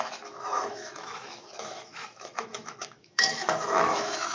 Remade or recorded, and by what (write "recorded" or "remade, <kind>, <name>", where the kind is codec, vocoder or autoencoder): remade, autoencoder, DAC-VAE